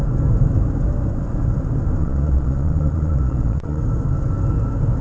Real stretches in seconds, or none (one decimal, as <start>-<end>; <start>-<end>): 0.0-2.0; 3.8-5.0